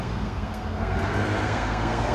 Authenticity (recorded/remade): remade